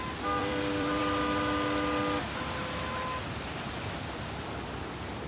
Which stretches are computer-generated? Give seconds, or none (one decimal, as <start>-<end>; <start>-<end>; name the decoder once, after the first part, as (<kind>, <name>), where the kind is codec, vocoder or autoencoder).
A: 0.0-1.0 (vocoder, BigVGAN v2); 4.2-5.3